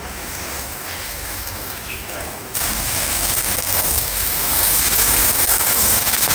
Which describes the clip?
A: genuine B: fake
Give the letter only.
B